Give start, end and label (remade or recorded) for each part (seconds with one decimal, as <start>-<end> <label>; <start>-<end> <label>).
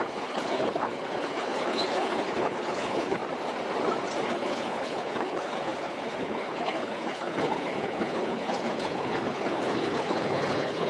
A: 0.0-3.2 remade; 3.2-4.3 recorded; 4.3-10.9 remade